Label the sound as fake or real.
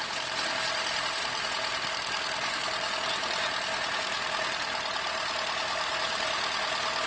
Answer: real